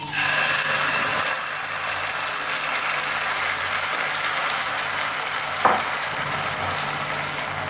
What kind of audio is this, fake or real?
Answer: fake